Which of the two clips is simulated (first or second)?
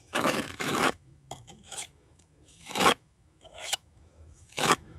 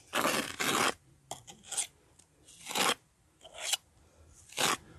first